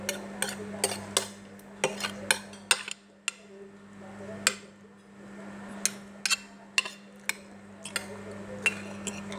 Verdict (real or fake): real